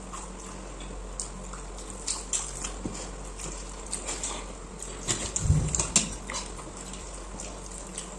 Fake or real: real